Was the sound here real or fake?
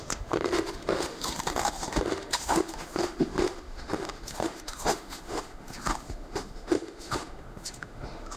fake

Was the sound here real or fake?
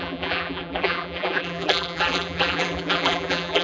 fake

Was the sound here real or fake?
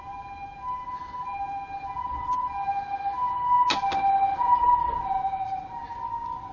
real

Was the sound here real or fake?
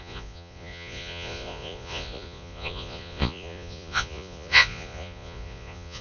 fake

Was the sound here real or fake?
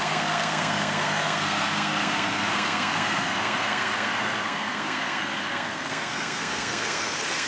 fake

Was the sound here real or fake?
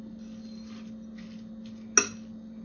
real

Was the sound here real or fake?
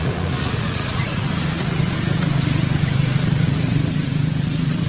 fake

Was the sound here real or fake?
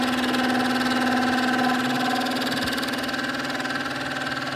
real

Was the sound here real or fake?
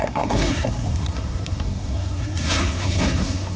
fake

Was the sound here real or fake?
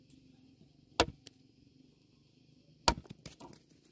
real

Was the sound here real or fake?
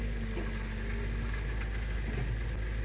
real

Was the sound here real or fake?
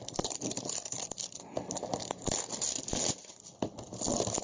real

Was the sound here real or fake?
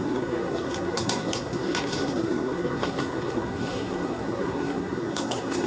fake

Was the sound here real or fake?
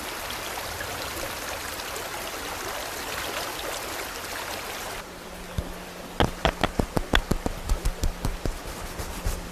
real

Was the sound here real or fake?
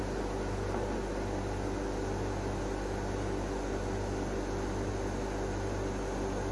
real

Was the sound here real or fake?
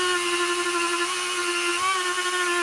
real